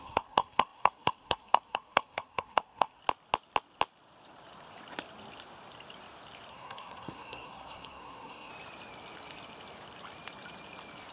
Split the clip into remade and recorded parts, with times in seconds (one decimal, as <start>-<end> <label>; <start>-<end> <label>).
0.0-3.0 remade; 3.0-6.5 recorded; 6.5-8.5 remade; 8.5-11.1 recorded